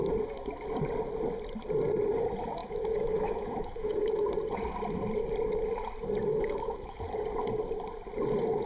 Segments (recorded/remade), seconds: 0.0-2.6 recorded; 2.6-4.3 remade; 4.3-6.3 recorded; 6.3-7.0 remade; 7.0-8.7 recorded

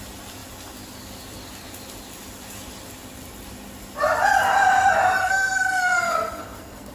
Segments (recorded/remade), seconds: 0.0-5.2 recorded; 5.2-6.9 remade

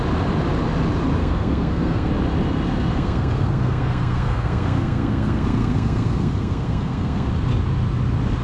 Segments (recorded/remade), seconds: 0.0-1.2 recorded; 1.2-2.1 remade; 2.1-2.9 recorded; 2.9-7.3 remade; 7.3-8.4 recorded

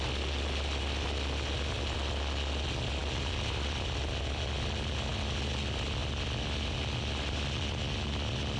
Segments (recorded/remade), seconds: 0.0-8.6 recorded

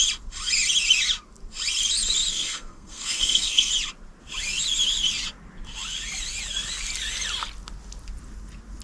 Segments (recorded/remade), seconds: 0.0-2.3 recorded; 2.3-3.7 remade; 3.7-8.8 recorded

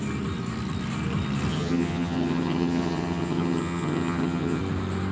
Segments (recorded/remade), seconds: 0.0-1.5 recorded; 1.5-4.6 remade; 4.6-5.1 recorded

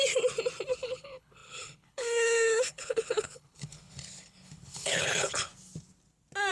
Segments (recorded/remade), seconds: 0.0-0.7 recorded; 0.7-5.5 remade; 5.5-6.5 recorded